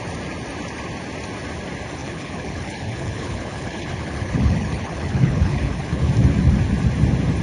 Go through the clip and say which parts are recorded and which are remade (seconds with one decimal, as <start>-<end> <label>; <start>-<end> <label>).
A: 0.0-2.0 recorded; 2.0-6.1 remade; 6.1-7.4 recorded